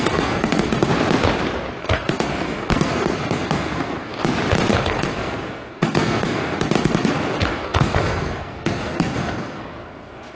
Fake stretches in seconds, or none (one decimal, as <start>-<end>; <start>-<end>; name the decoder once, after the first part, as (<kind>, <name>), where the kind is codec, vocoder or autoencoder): 0.0-0.9 (codec, SNAC); 1.8-4.1; 4.7-10.4